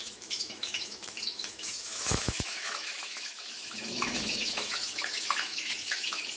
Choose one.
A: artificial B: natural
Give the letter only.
A